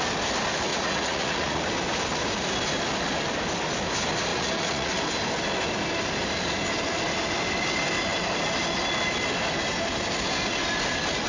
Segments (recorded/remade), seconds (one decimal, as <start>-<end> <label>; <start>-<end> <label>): 0.0-0.7 recorded; 0.7-1.6 remade; 1.6-4.3 recorded; 4.3-5.0 remade; 5.0-11.3 recorded

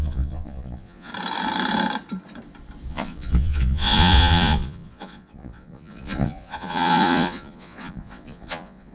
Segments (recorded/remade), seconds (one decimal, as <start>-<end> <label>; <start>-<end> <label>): 0.0-1.1 remade; 1.1-2.9 recorded; 2.9-8.9 remade

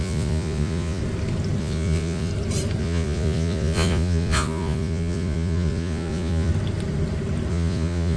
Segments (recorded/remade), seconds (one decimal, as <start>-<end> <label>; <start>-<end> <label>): 0.0-1.0 remade; 1.0-1.6 recorded; 1.6-2.3 remade; 2.3-2.8 recorded; 2.8-6.5 remade; 6.5-7.5 recorded; 7.5-8.2 remade